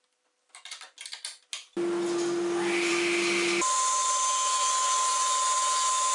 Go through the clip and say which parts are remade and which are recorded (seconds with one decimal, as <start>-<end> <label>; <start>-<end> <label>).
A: 0.0-6.1 recorded

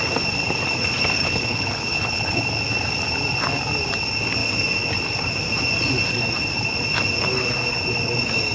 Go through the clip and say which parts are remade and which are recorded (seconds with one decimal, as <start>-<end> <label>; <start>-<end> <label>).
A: 0.0-1.2 recorded; 1.2-2.4 remade; 2.4-8.5 recorded

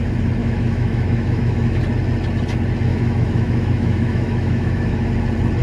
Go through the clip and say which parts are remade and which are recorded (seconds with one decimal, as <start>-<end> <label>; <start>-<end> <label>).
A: 0.0-0.4 recorded; 0.4-1.8 remade; 1.8-2.9 recorded; 2.9-5.1 remade; 5.1-5.6 recorded

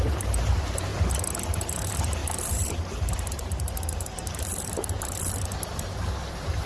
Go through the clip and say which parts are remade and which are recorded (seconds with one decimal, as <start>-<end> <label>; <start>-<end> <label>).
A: 0.0-0.9 remade; 0.9-1.4 recorded; 1.4-6.7 remade

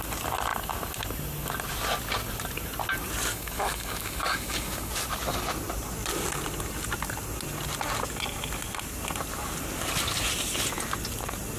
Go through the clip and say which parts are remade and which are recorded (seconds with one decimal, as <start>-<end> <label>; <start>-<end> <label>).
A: 0.0-3.3 recorded; 3.3-4.9 remade; 4.9-11.6 recorded

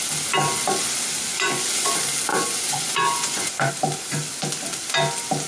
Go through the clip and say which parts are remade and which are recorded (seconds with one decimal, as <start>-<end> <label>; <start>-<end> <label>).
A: 0.0-1.3 recorded; 1.3-1.9 remade; 1.9-2.3 recorded; 2.3-3.7 remade; 3.7-5.5 recorded

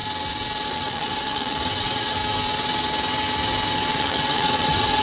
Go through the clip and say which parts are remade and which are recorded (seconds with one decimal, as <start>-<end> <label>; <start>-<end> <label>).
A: 0.0-0.7 recorded; 0.7-2.2 remade; 2.2-3.9 recorded; 3.9-5.0 remade